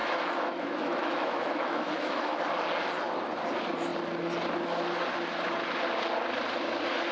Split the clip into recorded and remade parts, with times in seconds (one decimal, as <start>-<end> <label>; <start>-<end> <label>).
0.0-2.4 remade; 2.4-7.1 recorded